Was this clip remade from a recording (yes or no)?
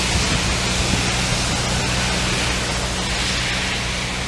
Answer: no